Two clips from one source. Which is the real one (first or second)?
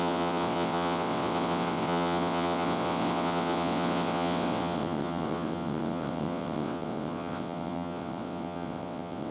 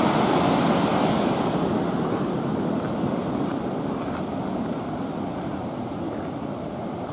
second